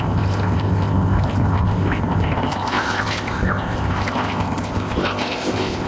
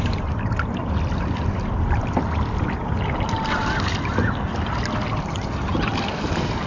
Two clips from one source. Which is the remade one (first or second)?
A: first